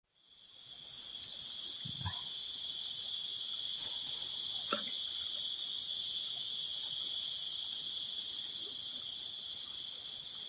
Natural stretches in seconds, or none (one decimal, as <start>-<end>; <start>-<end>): 0.0-3.8; 4.9-5.8; 8.0-10.5